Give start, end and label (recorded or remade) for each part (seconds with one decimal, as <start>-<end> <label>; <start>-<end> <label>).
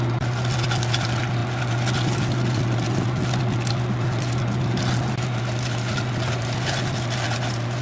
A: 0.0-7.8 recorded